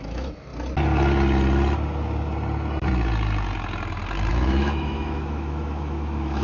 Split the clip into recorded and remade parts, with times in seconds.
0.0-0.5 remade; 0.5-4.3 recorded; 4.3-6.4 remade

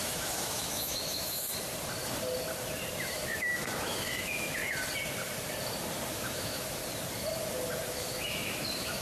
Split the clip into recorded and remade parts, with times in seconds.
0.0-1.5 remade; 1.5-3.0 recorded; 3.0-4.6 remade; 4.6-6.1 recorded; 6.1-6.8 remade; 6.8-7.9 recorded; 7.9-9.0 remade

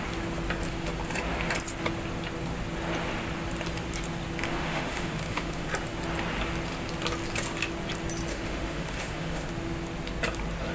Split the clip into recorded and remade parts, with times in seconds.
0.0-4.5 recorded; 4.5-5.7 remade; 5.7-8.3 recorded; 8.3-9.5 remade; 9.5-10.7 recorded

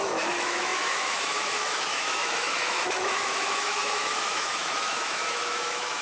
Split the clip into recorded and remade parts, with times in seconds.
0.0-6.0 remade

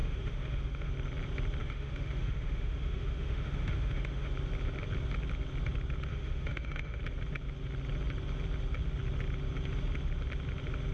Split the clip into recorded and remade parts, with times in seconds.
0.0-0.9 remade; 0.9-1.6 recorded; 1.6-4.3 remade; 4.3-6.1 recorded; 6.1-7.0 remade; 7.0-10.9 recorded

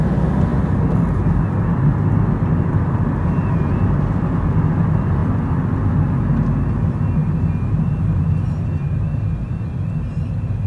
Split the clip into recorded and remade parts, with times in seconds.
0.0-10.7 recorded

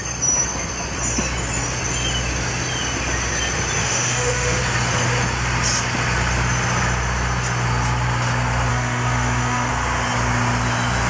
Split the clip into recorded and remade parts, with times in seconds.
0.0-3.8 recorded; 3.8-4.6 remade; 4.6-8.7 recorded; 8.7-9.7 remade; 9.7-11.1 recorded